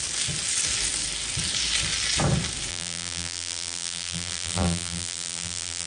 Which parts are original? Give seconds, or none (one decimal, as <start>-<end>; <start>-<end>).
0.0-2.7